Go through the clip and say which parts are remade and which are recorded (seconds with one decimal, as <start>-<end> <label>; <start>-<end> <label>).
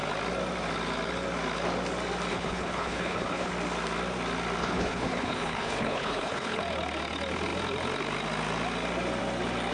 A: 0.0-2.3 recorded; 2.3-3.5 remade; 3.5-4.6 recorded; 4.6-6.6 remade; 6.6-9.7 recorded